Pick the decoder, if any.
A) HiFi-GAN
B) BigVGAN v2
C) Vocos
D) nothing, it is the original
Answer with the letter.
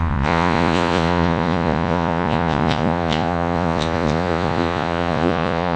C